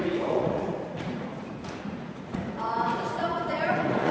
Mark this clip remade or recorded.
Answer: remade